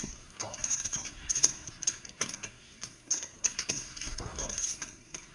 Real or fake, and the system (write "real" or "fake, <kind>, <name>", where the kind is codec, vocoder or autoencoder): fake, codec, SNAC